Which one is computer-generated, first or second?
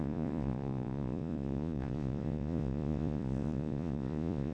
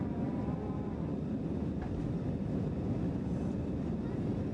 first